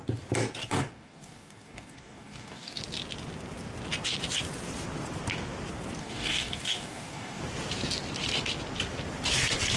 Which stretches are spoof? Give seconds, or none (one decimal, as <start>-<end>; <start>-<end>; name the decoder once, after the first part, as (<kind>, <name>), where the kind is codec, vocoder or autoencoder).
0.6-2.8 (codec, DAC); 6.0-7.4